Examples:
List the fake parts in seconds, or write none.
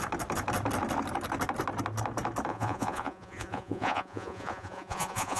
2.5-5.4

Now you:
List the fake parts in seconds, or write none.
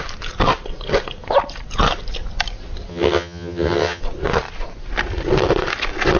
2.9-4.0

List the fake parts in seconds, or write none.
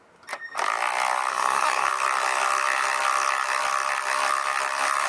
1.3-1.9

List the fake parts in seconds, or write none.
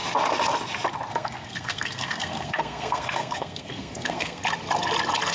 1.1-4.4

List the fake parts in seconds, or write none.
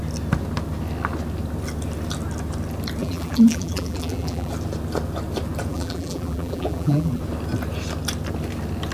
3.0-4.5; 5.7-7.2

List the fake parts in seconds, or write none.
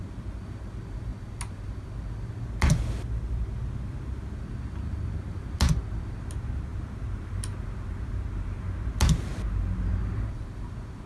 none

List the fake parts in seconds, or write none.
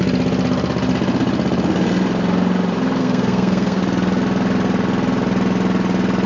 3.0-3.8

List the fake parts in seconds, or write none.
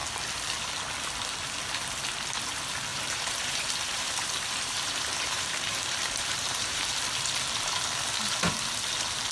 2.9-6.8